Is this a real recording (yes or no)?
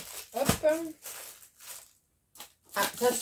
yes